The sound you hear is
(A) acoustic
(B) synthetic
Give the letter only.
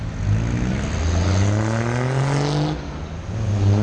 A